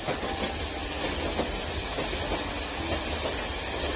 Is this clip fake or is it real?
real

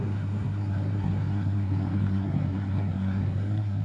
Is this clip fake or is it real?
fake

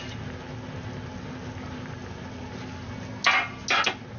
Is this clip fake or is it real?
real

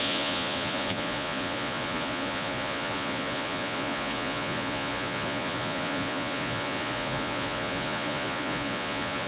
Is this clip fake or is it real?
fake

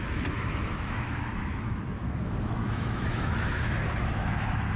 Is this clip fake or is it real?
fake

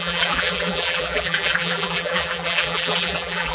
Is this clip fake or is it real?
fake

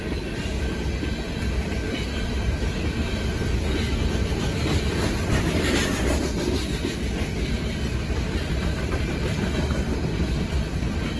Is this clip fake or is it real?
fake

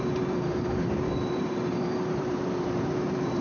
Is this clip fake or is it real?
fake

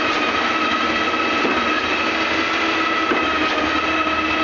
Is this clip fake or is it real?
real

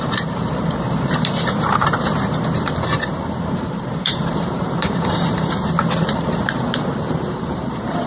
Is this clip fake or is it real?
fake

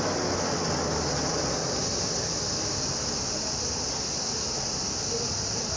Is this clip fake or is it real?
real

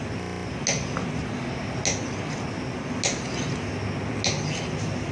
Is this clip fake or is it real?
real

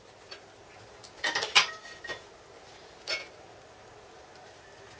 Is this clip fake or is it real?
real